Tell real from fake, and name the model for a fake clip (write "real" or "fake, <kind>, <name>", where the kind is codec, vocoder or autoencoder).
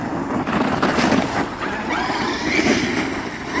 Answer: real